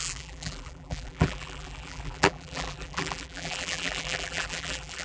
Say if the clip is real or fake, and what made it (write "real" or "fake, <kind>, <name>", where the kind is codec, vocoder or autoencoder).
fake, vocoder, BigVGAN v2